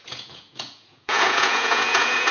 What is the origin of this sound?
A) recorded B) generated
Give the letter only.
B